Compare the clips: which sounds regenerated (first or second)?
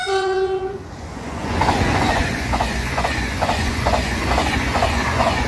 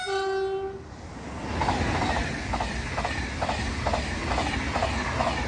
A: first